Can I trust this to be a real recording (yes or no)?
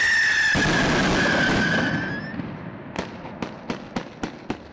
yes